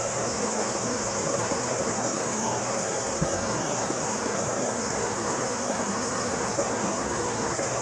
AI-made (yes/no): yes